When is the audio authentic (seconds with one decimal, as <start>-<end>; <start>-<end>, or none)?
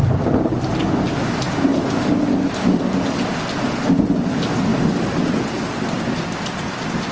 0.0-7.1